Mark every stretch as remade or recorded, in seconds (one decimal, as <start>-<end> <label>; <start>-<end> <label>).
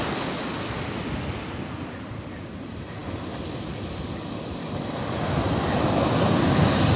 0.0-7.0 recorded